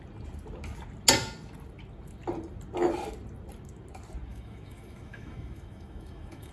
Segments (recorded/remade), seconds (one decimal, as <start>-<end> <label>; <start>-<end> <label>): 0.0-4.3 recorded; 4.3-6.5 remade